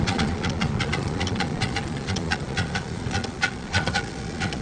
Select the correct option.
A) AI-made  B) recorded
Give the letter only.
A